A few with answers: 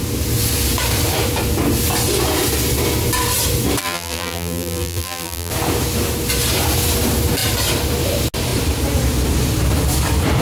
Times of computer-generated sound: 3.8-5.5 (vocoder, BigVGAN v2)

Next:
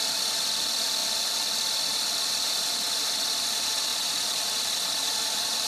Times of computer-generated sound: 0.0-1.0 (vocoder, BigVGAN v2); 2.3-5.7